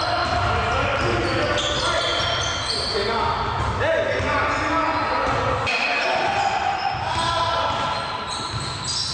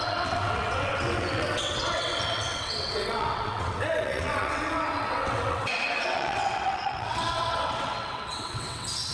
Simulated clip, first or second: second